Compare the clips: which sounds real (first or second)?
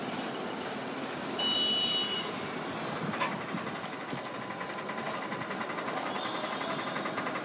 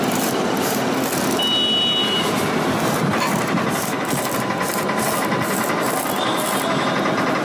second